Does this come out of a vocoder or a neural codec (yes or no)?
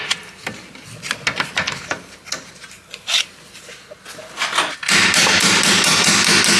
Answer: no